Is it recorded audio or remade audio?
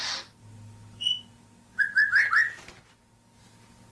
recorded